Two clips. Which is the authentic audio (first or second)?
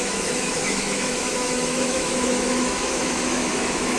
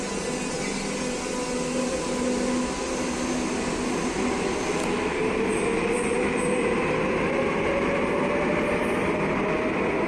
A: second